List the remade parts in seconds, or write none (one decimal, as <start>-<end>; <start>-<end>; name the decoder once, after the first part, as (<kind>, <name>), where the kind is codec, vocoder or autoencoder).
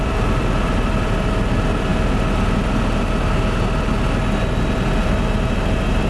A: 0.0-1.9 (vocoder, BigVGAN v2); 4.4-6.1